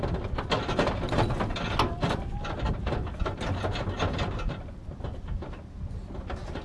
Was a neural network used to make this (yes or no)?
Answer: no